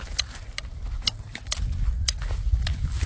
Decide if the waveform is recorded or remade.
recorded